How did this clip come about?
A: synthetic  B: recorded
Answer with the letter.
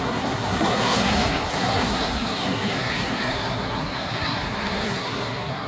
A